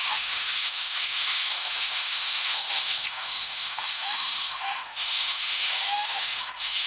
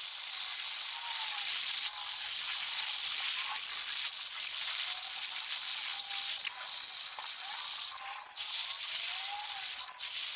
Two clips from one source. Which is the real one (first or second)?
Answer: second